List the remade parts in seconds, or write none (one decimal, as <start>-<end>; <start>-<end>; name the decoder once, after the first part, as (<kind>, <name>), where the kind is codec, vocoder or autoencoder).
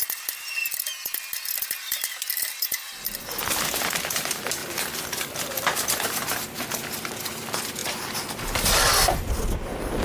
none